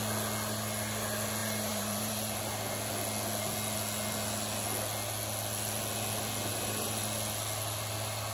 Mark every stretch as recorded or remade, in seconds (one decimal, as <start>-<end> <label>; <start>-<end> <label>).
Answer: 0.0-1.4 recorded; 1.4-2.4 remade; 2.4-6.5 recorded; 6.5-7.0 remade; 7.0-8.3 recorded